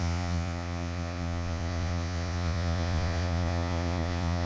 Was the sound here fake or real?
fake